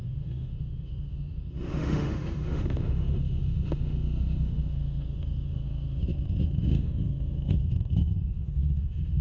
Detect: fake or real fake